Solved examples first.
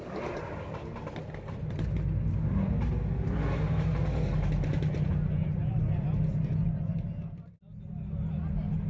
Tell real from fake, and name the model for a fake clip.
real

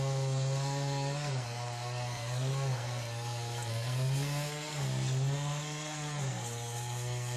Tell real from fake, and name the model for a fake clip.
fake, codec, SNAC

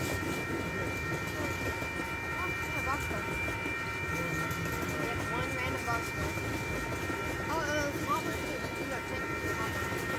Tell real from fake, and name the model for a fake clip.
real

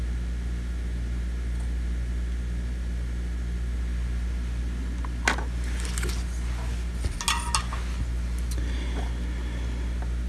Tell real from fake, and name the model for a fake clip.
real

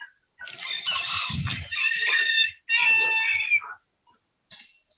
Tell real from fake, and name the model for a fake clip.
real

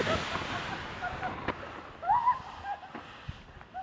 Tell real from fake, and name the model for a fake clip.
real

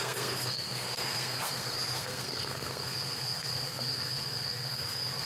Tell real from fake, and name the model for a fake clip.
fake, codec, SNAC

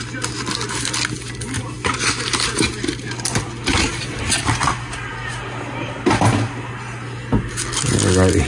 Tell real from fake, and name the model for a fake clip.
real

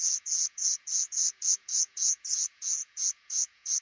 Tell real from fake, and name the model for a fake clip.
fake, vocoder, Vocos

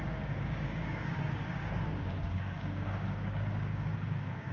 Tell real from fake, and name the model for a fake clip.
fake, codec, DAC